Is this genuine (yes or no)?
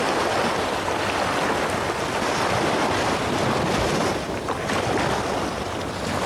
yes